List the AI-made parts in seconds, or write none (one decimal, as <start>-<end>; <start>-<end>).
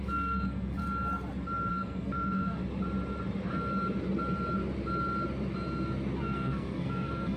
0.0-0.8; 1.7-2.6; 6.2-7.4